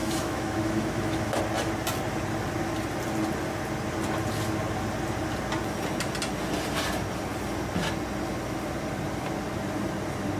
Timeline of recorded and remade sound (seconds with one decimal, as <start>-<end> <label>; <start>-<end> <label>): 0.0-1.4 remade; 1.4-10.4 recorded